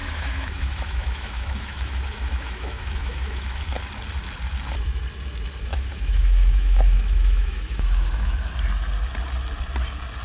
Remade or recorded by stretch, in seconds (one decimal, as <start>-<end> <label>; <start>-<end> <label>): 0.0-3.6 remade; 3.6-5.7 recorded; 5.7-8.5 remade; 8.5-10.2 recorded